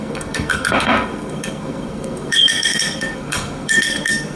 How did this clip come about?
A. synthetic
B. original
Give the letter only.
A